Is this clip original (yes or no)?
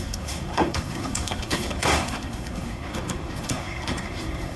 no